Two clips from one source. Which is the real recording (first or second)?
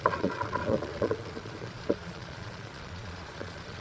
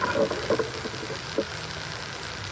second